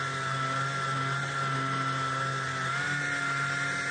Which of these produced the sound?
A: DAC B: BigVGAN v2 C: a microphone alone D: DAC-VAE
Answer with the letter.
C